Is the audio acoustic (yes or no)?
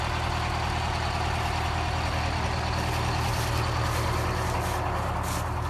yes